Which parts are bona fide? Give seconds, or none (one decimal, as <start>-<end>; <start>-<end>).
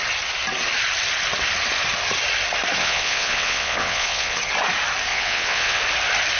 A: 0.0-2.8; 4.4-5.1; 5.8-6.4